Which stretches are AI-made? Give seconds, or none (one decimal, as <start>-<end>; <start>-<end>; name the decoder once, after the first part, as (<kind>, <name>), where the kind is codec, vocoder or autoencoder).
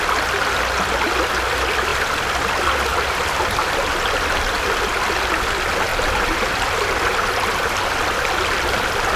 1.9-2.5 (vocoder, BigVGAN v2); 2.9-4.8; 5.9-7.1